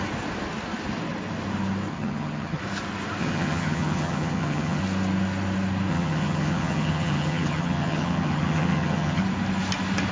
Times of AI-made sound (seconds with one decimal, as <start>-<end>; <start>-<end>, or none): 1.9-2.6; 3.2-4.8; 5.9-9.2